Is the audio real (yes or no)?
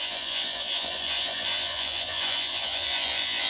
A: no